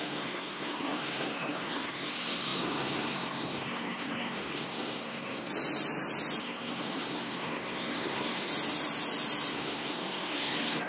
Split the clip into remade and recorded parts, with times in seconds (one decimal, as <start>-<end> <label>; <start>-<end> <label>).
0.0-5.5 remade; 5.5-6.4 recorded; 6.4-8.5 remade; 8.5-9.5 recorded; 9.5-10.9 remade